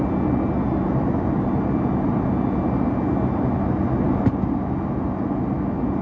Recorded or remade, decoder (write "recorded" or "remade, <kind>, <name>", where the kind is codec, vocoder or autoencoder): recorded